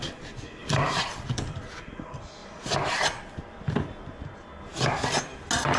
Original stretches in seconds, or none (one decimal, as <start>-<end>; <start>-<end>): 0.0-0.6; 1.9-2.4; 3.6-5.8